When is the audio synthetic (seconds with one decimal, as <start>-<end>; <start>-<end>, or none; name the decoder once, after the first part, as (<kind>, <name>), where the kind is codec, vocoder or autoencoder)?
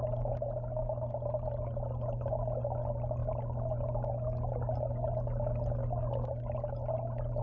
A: none